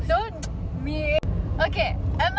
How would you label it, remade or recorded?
recorded